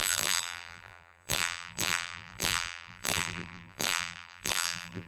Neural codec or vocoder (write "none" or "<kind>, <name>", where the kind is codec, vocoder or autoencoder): vocoder, BigVGAN v2